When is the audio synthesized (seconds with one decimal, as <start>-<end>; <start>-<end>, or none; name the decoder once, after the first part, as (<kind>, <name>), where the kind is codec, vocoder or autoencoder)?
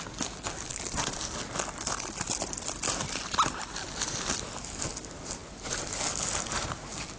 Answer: none